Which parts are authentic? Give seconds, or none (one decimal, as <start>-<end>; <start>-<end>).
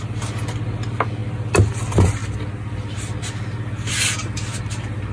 0.0-5.1